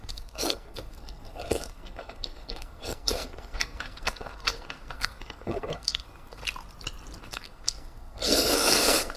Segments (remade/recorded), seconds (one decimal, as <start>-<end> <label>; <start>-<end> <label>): 0.0-6.4 remade; 6.4-7.2 recorded; 7.2-9.2 remade